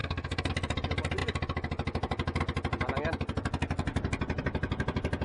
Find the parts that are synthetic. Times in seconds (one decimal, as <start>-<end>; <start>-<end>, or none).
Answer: 0.0-0.5

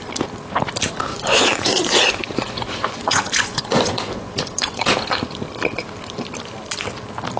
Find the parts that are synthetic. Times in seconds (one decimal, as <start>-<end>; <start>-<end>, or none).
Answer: 1.1-5.2

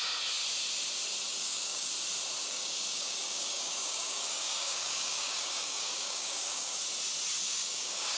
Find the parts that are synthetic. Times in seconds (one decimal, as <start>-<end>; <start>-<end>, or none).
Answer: 1.3-1.9; 2.4-6.8; 7.4-8.2

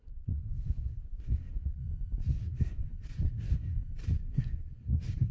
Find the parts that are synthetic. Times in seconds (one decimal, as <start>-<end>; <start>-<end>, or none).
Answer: 0.0-1.8; 2.3-2.8; 3.3-3.7; 4.2-5.3

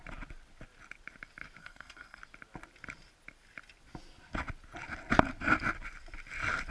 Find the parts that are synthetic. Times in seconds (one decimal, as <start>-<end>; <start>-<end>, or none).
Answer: 1.6-2.2

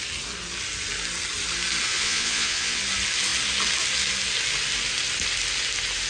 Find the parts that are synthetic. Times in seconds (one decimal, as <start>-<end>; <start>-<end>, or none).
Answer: 1.9-2.8

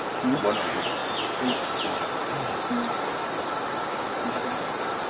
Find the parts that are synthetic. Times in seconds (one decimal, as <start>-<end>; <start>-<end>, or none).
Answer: none